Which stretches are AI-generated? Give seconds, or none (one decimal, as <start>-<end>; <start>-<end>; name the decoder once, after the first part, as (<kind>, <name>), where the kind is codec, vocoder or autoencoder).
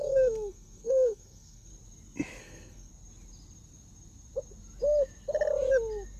0.0-1.7 (codec, SNAC); 2.4-2.9